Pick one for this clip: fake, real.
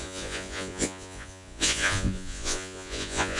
fake